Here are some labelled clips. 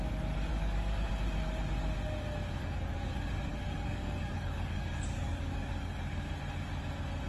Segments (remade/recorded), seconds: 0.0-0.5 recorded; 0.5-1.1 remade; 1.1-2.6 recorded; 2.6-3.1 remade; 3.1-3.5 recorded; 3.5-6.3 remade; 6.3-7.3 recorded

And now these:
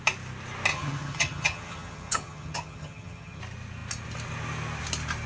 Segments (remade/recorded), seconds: 0.0-0.7 recorded; 0.7-3.4 remade; 3.4-5.3 recorded

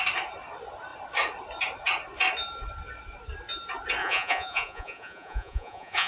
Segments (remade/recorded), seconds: 0.0-4.0 recorded; 4.0-6.1 remade